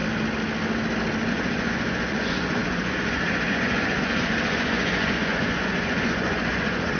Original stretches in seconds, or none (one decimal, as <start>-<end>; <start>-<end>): 0.0-1.3